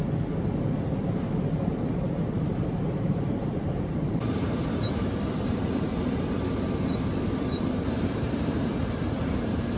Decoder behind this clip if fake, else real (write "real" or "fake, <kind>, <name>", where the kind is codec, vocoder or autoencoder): fake, vocoder, BigVGAN v2